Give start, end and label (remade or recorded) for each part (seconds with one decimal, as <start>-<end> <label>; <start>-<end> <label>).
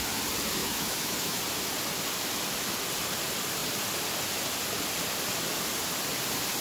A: 0.0-0.6 recorded; 0.6-1.4 remade; 1.4-6.6 recorded